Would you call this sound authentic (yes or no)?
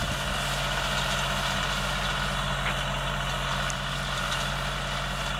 yes